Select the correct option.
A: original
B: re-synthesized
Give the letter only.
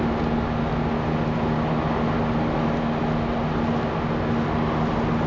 A